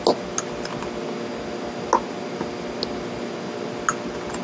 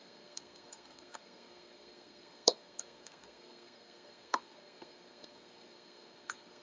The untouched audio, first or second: first